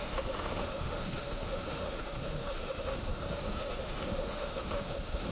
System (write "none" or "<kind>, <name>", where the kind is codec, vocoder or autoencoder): autoencoder, DAC-VAE